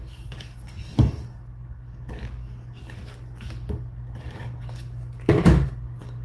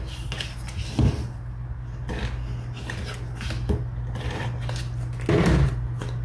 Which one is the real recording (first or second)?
second